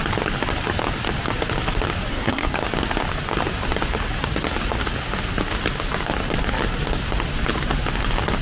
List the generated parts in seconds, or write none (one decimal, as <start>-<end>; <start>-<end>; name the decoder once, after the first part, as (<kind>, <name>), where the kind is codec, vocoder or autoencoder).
2.1-2.6 (codec, SNAC)